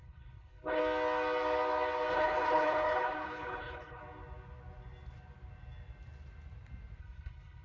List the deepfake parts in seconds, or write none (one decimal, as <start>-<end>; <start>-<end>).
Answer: 0.0-0.8; 2.1-4.0; 7.0-7.6